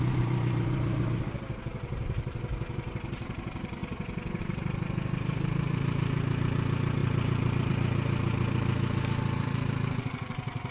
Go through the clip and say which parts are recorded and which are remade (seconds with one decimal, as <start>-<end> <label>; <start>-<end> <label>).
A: 0.0-3.8 remade; 3.8-4.4 recorded; 4.4-10.7 remade